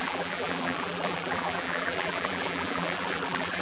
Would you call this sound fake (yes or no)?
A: yes